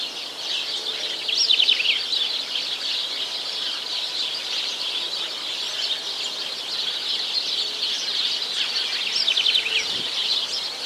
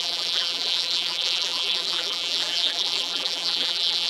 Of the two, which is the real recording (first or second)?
first